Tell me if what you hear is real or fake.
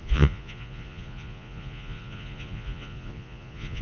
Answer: fake